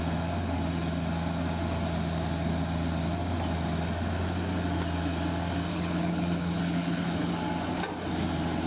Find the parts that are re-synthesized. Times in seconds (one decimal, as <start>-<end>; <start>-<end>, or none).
5.7-7.3